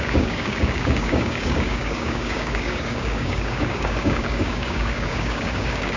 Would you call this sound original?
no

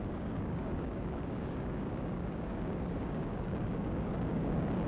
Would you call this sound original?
no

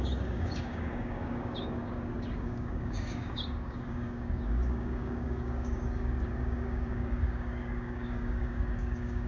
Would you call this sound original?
no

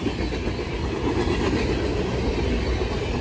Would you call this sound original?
yes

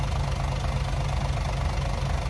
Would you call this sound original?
yes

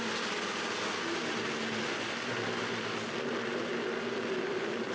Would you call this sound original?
yes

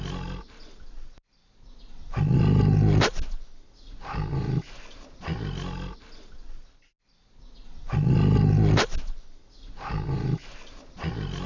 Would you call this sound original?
yes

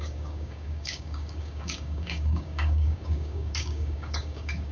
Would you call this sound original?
no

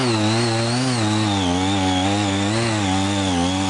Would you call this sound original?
yes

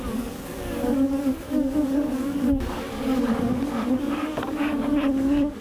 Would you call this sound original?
no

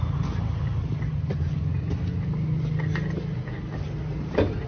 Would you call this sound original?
yes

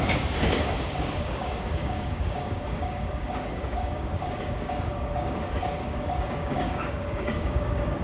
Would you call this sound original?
no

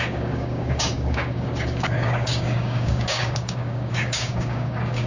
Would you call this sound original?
no